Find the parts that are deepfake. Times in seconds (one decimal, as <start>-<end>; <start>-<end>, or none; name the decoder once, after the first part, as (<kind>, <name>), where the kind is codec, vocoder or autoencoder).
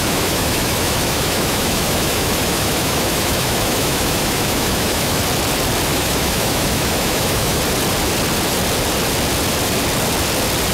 0.0-5.2 (autoencoder, DAC-VAE); 5.9-7.6